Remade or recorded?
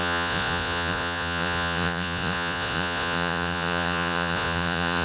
remade